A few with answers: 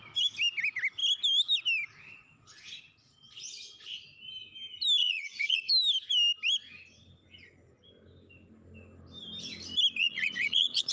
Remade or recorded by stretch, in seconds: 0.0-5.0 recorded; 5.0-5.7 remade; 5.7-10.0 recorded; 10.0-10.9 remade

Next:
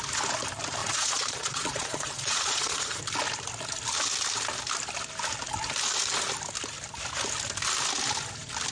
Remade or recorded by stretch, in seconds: 0.0-0.8 recorded; 0.8-3.0 remade; 3.0-8.7 recorded

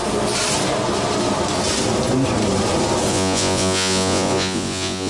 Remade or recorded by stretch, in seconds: 0.0-3.1 recorded; 3.1-5.1 remade

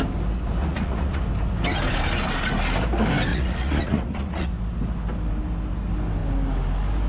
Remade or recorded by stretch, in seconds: 0.0-0.6 recorded; 0.6-1.2 remade; 1.2-3.3 recorded; 3.3-4.5 remade; 4.5-7.1 recorded

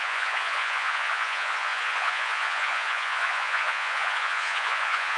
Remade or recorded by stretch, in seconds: 0.0-5.2 remade